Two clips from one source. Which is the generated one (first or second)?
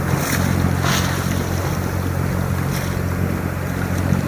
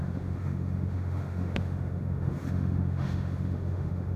second